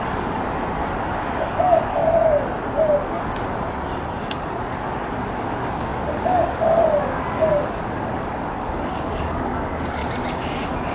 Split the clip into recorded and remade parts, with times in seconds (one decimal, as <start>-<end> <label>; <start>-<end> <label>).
0.0-0.4 remade; 0.4-1.1 recorded; 1.1-2.0 remade; 2.0-5.2 recorded; 5.2-10.0 remade; 10.0-10.9 recorded

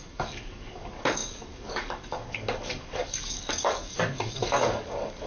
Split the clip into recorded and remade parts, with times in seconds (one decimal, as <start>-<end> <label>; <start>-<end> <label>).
0.0-5.3 remade

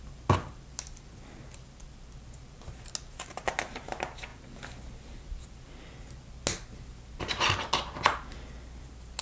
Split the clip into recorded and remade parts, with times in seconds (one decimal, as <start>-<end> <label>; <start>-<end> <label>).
0.0-9.2 recorded